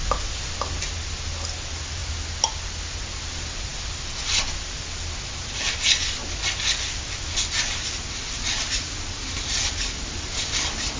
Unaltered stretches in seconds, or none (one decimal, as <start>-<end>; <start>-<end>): 0.0-11.0